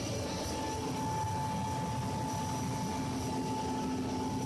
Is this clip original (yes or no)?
yes